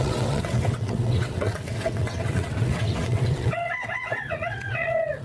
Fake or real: fake